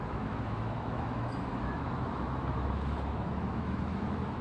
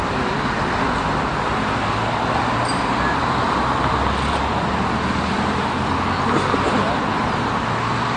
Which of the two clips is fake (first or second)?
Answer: first